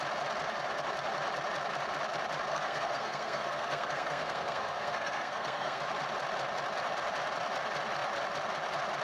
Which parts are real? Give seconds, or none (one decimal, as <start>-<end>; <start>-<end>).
0.0-2.5; 5.8-9.0